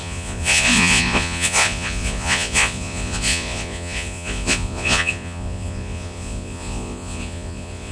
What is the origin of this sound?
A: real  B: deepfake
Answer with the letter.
B